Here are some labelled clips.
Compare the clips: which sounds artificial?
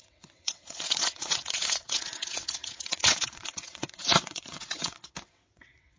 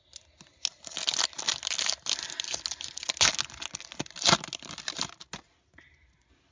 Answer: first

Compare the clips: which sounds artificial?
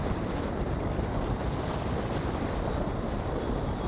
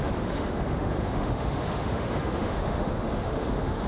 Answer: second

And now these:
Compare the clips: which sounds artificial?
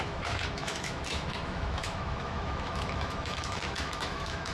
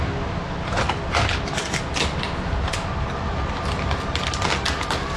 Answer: first